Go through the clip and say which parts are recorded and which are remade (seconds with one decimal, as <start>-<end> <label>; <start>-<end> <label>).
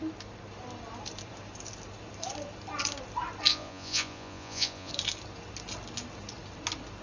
0.0-3.5 recorded; 3.5-4.9 remade; 4.9-7.0 recorded